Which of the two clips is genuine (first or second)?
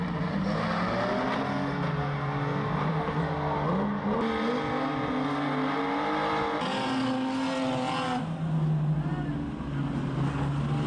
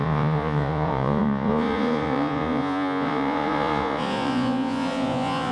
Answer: first